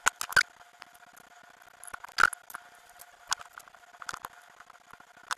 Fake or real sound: real